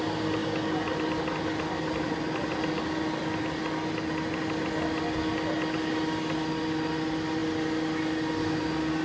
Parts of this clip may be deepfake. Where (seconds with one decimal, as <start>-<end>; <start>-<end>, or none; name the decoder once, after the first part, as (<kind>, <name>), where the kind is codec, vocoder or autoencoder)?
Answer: none